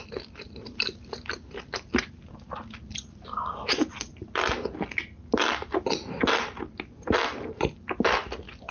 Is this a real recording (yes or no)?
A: yes